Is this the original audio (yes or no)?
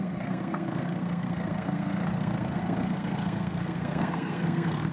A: no